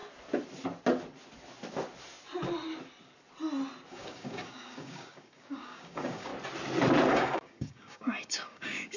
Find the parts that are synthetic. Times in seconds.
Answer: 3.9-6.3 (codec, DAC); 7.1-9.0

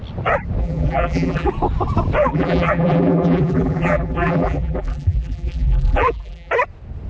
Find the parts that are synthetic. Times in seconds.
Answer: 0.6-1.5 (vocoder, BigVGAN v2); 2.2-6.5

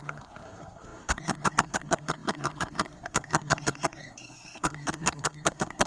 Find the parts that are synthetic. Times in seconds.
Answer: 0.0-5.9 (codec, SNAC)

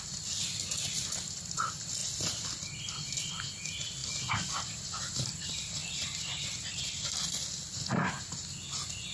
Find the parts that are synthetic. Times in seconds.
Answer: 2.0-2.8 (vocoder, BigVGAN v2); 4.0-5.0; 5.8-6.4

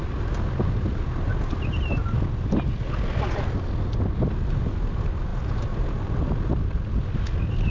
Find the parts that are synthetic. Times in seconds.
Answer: none